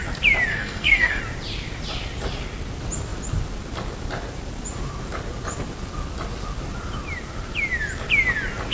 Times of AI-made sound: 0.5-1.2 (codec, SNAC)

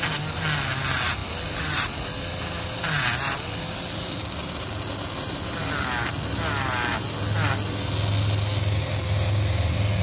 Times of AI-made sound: none